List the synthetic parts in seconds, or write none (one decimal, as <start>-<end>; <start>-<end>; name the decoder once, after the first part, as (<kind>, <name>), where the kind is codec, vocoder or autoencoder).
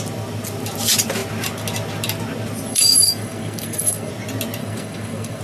2.7-4.1 (codec, SNAC); 4.6-5.4